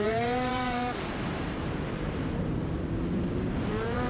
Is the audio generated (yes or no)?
yes